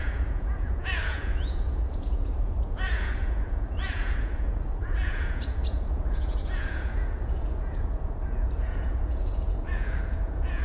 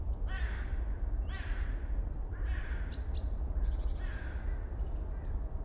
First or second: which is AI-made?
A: first